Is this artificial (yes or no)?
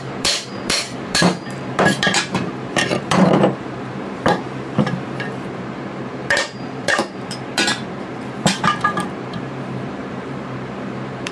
yes